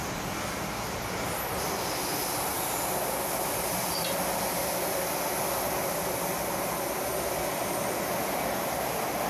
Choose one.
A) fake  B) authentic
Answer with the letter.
B